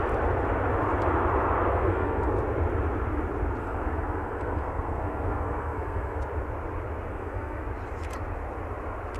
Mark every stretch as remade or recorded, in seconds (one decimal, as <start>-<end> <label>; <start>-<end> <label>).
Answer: 0.0-1.7 recorded; 1.7-2.3 remade; 2.3-3.6 recorded; 3.6-6.2 remade; 6.2-7.1 recorded; 7.1-7.6 remade; 7.6-9.2 recorded